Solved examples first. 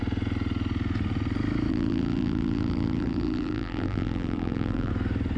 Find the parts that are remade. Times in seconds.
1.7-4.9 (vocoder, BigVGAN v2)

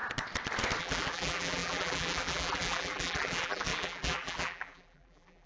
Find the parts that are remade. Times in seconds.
0.8-5.5 (vocoder, BigVGAN v2)

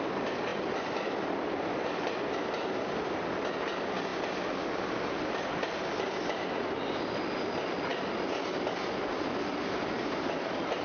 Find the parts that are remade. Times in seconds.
0.5-2.6 (vocoder, BigVGAN v2)

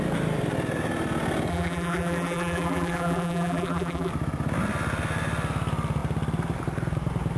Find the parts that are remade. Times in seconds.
1.5-4.1 (vocoder, BigVGAN v2)

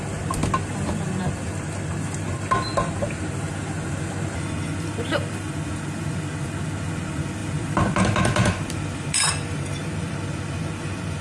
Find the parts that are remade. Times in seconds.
7.4-10.1 (vocoder, BigVGAN v2)

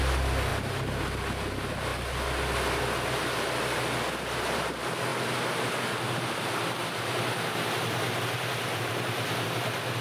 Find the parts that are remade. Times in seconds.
none

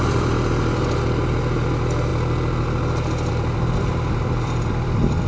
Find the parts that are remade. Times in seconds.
0.0-2.1 (vocoder, BigVGAN v2); 3.3-5.3